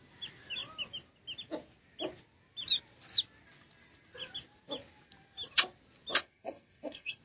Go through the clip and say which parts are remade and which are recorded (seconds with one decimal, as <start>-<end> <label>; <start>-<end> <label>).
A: 0.0-6.2 recorded; 6.2-7.2 remade